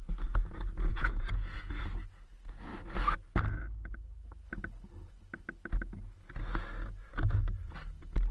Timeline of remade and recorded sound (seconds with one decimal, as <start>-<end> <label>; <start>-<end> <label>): 0.0-0.9 recorded; 0.9-1.6 remade; 1.6-8.3 recorded